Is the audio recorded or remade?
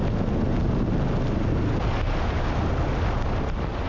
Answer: recorded